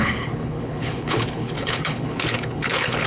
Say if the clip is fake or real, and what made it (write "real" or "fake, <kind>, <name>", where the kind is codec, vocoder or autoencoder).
fake, codec, HILCodec